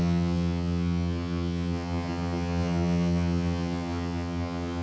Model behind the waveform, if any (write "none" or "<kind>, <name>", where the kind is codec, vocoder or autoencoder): vocoder, HiFi-GAN